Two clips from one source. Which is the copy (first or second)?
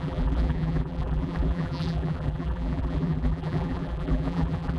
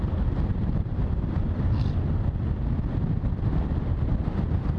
first